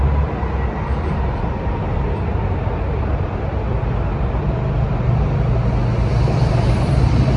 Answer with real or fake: real